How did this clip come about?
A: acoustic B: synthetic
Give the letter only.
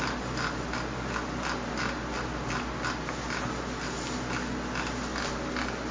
A